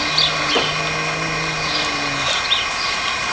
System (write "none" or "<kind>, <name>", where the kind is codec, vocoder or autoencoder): none